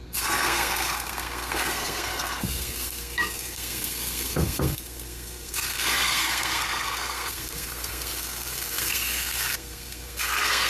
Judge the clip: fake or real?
fake